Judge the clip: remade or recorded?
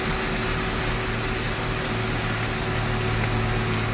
recorded